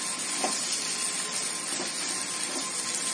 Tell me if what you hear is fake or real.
real